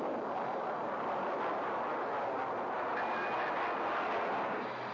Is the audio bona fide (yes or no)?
yes